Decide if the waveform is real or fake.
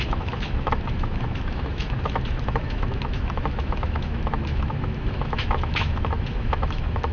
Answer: fake